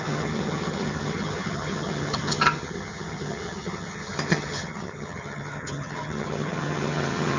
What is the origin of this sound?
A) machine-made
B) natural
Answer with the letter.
A